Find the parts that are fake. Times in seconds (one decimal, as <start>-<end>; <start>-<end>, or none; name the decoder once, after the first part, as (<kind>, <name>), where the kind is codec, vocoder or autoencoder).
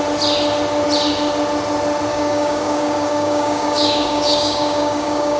2.1-5.4 (codec, DAC)